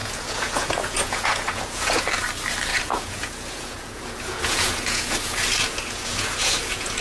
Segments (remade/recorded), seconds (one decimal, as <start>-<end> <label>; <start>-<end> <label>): 0.0-2.0 remade; 2.0-2.7 recorded; 2.7-7.0 remade